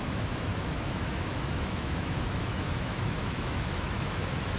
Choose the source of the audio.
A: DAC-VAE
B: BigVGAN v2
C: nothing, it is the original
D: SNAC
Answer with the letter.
A